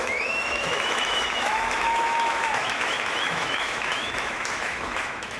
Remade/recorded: remade